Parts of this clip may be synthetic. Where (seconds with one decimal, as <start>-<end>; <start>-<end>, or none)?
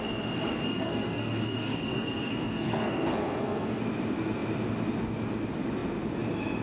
0.5-3.8